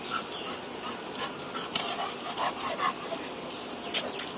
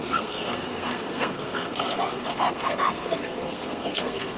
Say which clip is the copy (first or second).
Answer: second